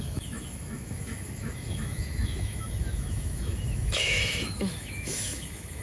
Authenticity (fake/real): fake